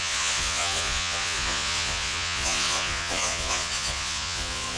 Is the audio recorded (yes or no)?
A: no